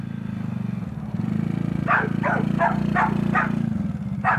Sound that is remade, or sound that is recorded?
recorded